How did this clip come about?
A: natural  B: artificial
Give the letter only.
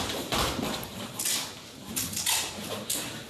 A